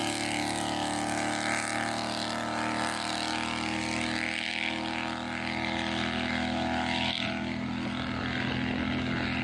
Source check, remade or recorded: recorded